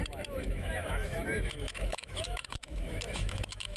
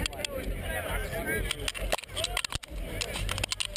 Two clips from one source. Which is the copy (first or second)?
first